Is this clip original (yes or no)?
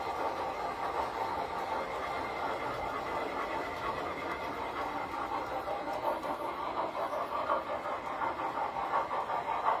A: yes